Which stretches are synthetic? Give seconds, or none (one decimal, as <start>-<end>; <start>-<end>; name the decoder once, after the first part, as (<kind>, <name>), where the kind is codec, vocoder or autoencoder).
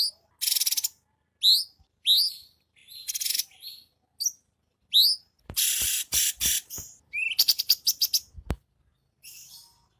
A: none